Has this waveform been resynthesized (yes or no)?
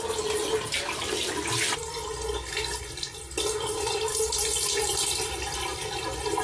no